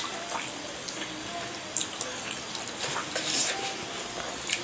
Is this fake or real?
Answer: real